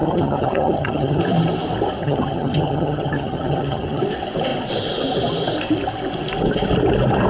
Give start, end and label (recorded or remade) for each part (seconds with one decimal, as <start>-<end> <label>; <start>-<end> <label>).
0.0-1.2 remade; 1.2-2.0 recorded; 2.0-4.0 remade; 4.0-7.3 recorded